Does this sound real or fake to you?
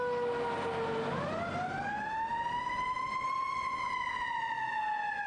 real